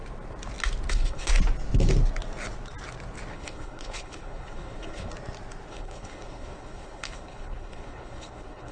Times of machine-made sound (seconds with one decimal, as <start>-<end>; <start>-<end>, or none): 0.9-1.3; 3.3-5.1; 5.7-8.7